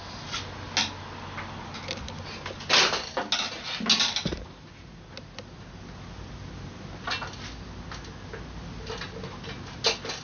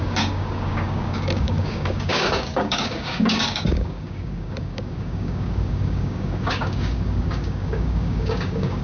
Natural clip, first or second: first